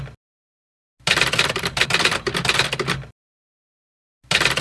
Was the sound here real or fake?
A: real